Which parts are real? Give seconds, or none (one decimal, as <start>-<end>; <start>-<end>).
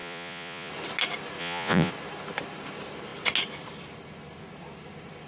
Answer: 0.7-1.4; 1.9-5.3